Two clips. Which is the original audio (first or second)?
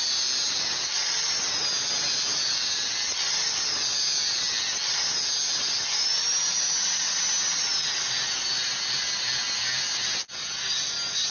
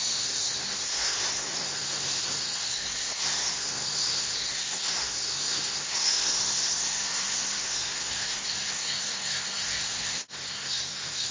first